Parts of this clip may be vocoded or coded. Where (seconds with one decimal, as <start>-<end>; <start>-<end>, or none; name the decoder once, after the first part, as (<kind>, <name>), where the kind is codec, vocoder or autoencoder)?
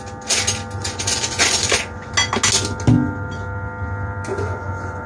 0.8-2.1 (vocoder, Vocos); 4.3-5.1